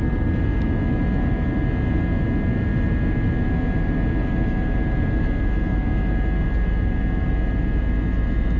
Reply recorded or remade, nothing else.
recorded